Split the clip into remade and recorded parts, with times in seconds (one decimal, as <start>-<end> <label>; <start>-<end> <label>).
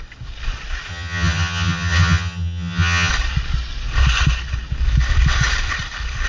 0.0-0.9 recorded; 0.9-3.1 remade; 3.1-6.3 recorded